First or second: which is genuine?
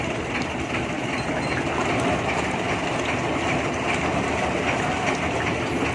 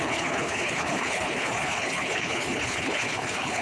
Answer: first